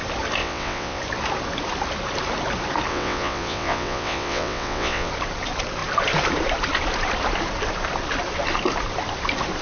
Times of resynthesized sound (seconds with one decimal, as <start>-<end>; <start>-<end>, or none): 0.4-1.0; 2.9-5.1